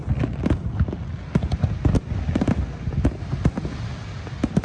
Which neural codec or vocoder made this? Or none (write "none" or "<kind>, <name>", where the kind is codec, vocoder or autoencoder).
none